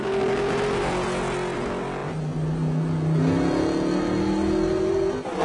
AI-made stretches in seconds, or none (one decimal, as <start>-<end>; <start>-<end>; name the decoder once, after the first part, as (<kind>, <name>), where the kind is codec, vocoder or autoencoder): none